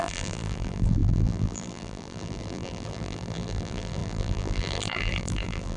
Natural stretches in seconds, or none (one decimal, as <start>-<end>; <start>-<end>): none